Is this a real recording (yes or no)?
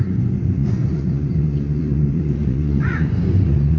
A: no